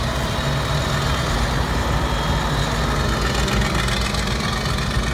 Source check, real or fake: real